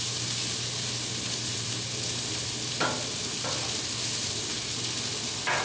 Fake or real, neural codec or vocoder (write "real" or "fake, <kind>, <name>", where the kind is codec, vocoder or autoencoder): real